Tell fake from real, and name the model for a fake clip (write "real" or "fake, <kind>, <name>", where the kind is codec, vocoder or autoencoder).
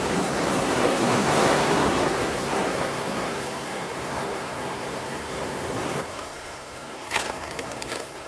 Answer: fake, codec, SNAC